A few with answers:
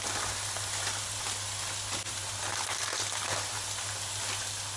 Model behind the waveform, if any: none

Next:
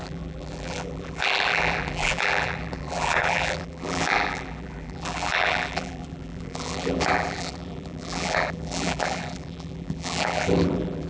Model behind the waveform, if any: vocoder, BigVGAN v2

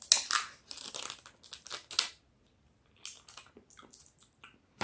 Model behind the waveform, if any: none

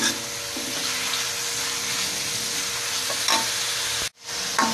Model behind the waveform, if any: none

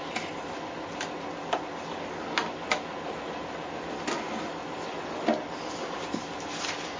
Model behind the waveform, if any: none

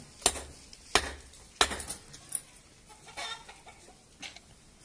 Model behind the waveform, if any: none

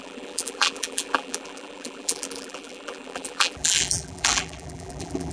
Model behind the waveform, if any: vocoder, BigVGAN v2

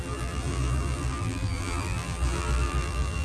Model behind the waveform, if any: vocoder, BigVGAN v2